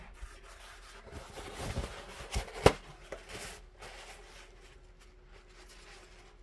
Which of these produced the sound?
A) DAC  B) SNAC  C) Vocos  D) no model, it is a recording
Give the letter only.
D